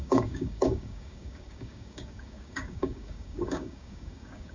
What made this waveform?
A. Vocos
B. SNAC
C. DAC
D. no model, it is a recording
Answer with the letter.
C